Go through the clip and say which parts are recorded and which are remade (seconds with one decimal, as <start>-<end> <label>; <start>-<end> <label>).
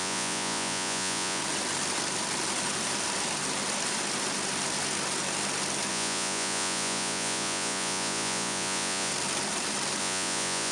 0.0-1.4 remade; 1.4-5.9 recorded; 5.9-9.1 remade; 9.1-10.0 recorded; 10.0-10.7 remade